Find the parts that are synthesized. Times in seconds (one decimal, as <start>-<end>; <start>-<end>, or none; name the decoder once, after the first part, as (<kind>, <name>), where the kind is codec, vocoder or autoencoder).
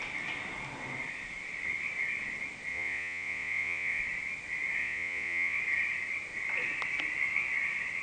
2.7-4.0 (vocoder, Vocos); 4.8-5.6